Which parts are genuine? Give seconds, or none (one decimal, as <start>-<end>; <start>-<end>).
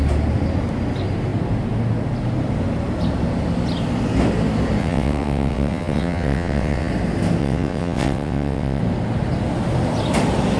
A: 0.0-4.8; 6.9-7.4; 8.8-10.6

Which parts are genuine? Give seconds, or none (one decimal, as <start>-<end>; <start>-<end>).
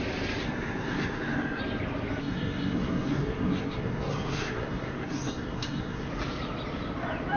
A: 0.0-0.4; 1.6-2.2; 6.1-7.4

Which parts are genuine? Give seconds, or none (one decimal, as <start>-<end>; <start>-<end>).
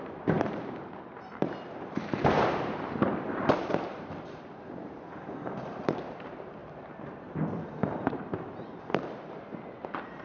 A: none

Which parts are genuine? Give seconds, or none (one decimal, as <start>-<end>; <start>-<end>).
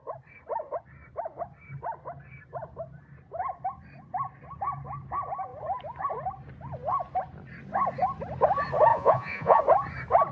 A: 0.0-8.9; 9.6-10.3